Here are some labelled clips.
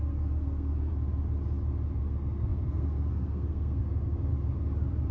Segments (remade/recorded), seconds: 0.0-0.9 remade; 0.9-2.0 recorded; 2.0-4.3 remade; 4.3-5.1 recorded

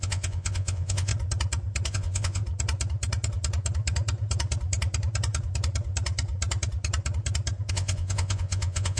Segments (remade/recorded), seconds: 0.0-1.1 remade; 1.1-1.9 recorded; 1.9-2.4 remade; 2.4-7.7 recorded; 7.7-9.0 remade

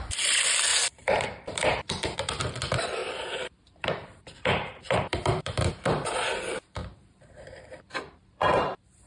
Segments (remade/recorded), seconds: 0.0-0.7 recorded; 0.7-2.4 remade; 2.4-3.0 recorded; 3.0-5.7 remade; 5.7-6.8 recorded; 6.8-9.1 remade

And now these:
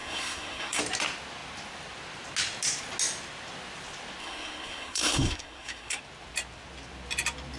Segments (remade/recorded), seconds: 0.0-0.8 remade; 0.8-4.2 recorded; 4.2-6.0 remade; 6.0-7.6 recorded